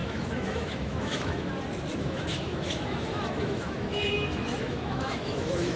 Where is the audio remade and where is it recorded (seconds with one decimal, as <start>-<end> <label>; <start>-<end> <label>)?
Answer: 0.0-1.5 remade; 1.5-1.9 recorded; 1.9-5.8 remade